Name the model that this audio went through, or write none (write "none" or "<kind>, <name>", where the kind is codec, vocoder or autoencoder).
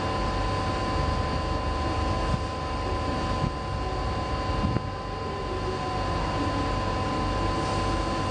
none